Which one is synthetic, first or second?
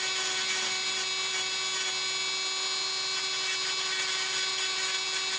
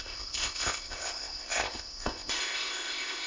second